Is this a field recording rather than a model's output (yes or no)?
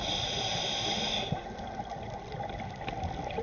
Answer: yes